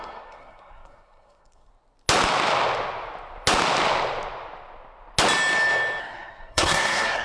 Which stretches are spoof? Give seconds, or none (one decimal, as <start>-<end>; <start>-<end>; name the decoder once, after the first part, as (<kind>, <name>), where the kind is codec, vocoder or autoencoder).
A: 0.0-1.7 (codec, SNAC); 6.0-7.2